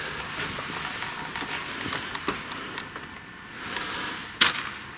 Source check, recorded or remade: recorded